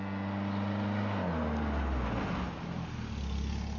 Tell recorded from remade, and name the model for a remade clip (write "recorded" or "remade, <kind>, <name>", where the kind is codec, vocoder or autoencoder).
recorded